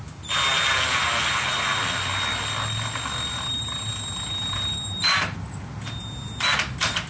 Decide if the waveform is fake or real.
real